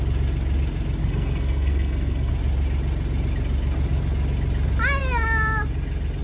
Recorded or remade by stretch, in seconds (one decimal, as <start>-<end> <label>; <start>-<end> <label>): 0.0-1.0 recorded; 1.0-2.3 remade; 2.3-6.2 recorded